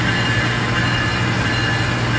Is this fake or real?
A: real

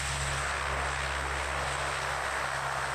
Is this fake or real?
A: real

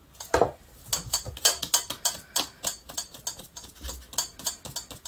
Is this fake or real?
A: real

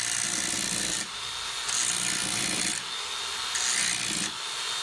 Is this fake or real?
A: real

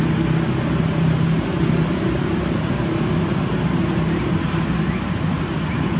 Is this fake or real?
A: real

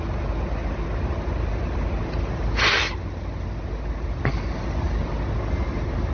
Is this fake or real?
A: real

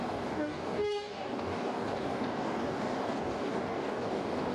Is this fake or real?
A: fake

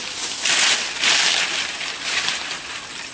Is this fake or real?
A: real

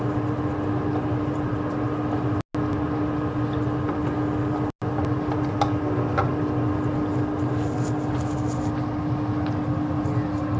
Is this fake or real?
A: real